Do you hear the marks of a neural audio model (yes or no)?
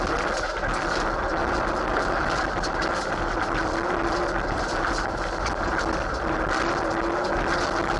no